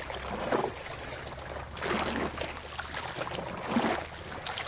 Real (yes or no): yes